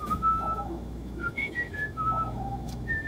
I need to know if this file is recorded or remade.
remade